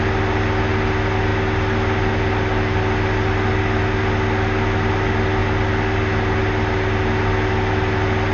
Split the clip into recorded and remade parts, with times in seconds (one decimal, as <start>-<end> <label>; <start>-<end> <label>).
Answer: 0.0-8.3 recorded